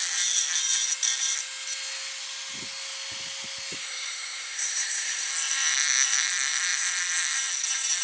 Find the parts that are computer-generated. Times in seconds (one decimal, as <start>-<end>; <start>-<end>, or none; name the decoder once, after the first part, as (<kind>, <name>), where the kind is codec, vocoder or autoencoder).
3.8-5.3 (codec, SNAC)